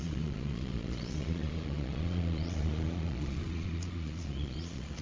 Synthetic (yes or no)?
yes